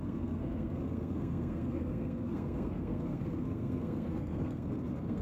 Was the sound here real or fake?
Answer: fake